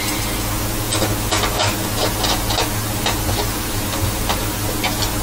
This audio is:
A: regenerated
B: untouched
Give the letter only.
B